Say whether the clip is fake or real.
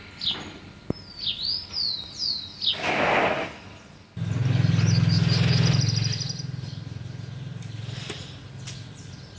real